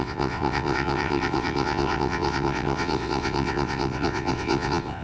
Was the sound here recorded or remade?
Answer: remade